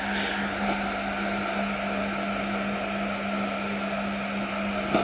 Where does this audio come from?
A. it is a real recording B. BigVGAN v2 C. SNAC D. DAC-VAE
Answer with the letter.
A